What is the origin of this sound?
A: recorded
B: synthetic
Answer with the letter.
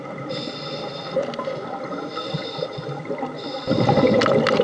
A